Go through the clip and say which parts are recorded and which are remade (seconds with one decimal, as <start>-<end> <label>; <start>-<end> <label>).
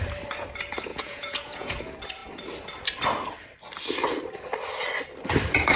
0.0-0.9 recorded; 0.9-1.8 remade; 1.8-5.8 recorded